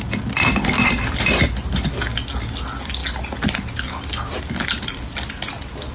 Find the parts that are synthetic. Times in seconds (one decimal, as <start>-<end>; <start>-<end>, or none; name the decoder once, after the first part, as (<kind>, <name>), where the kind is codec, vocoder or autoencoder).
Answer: none